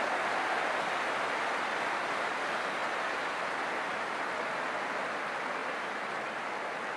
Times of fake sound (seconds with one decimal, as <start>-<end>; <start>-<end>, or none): 2.8-3.5; 5.6-6.4